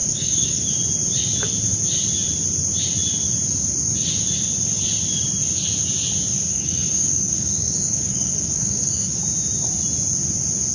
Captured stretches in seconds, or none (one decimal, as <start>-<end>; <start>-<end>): 0.7-6.5; 9.2-10.7